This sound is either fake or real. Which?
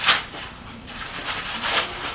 fake